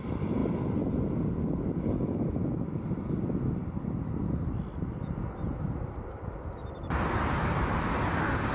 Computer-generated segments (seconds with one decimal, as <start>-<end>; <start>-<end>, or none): none

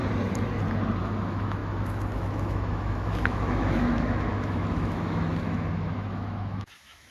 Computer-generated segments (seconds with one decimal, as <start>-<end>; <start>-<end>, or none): 1.0-7.1

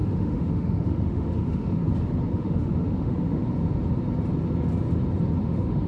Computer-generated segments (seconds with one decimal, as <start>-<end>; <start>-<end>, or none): 0.0-1.8; 2.3-3.4; 5.4-5.9

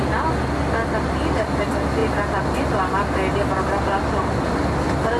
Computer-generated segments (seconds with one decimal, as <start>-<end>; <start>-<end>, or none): none